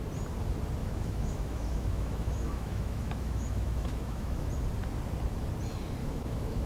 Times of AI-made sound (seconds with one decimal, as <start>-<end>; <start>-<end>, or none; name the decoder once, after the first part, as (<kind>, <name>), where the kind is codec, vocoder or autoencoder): 0.8-4.5 (autoencoder, DAC-VAE); 6.0-6.7